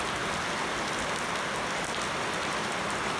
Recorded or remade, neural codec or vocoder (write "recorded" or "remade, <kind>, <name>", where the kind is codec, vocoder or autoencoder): recorded